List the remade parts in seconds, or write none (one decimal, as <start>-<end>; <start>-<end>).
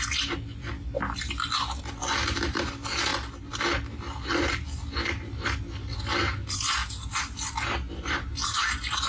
none